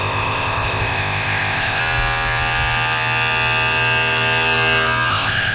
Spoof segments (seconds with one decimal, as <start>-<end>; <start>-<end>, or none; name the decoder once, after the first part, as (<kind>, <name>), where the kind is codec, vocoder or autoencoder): 0.0-1.8 (codec, ZipCodec); 5.1-5.5